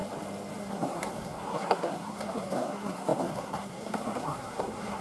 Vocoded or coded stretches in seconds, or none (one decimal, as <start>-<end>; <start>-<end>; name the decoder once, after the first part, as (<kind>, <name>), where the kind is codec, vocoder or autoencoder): 0.6-5.0 (codec, SNAC)